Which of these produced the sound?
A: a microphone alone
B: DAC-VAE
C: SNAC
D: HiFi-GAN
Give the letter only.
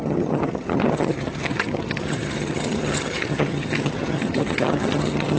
D